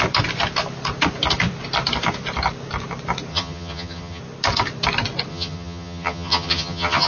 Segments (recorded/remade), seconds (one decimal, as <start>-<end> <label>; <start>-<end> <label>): 0.0-3.3 recorded; 3.3-4.2 remade; 4.2-5.3 recorded; 5.3-7.1 remade